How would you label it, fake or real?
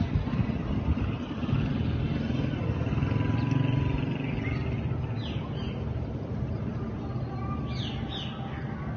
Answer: real